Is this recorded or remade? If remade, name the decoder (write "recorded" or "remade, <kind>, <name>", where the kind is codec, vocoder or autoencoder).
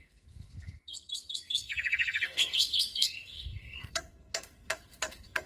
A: remade, codec, SNAC